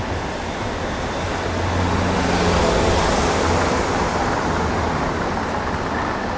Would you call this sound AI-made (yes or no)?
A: no